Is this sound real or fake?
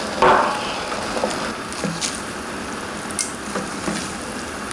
real